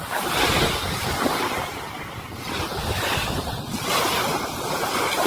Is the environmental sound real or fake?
real